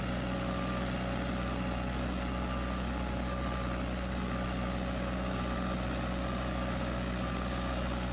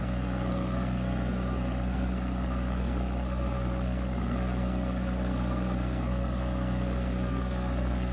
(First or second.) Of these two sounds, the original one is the first